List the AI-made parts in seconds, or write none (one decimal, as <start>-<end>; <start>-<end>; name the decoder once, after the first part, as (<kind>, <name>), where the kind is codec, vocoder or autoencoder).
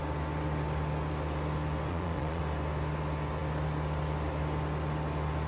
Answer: 1.9-2.4 (vocoder, Vocos)